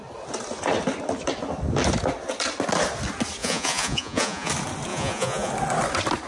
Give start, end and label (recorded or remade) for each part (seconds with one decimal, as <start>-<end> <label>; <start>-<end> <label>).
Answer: 0.0-3.4 recorded; 3.4-4.5 remade; 4.5-4.9 recorded; 4.9-5.5 remade; 5.5-6.3 recorded